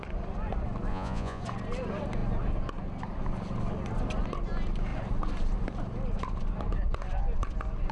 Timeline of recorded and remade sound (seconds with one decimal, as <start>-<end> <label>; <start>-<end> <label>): 0.0-0.9 recorded; 0.9-1.4 remade; 1.4-7.9 recorded